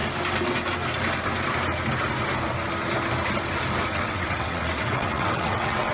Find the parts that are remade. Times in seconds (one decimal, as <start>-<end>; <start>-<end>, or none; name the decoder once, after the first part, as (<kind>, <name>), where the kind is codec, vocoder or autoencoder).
3.9-5.9 (vocoder, WaveNeXt)